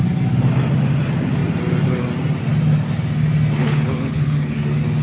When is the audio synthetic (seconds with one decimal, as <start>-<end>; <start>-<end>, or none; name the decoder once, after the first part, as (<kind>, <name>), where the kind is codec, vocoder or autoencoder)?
3.6-4.6 (codec, HILCodec)